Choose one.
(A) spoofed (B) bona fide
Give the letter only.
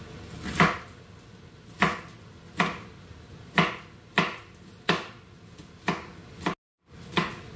B